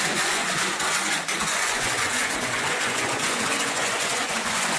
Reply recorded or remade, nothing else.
remade